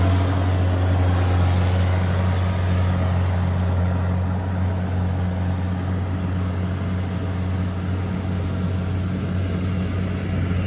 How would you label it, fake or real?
real